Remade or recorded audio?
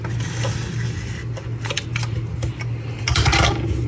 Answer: recorded